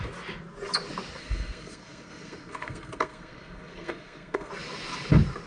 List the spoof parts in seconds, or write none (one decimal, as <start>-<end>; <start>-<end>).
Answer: 1.2-4.5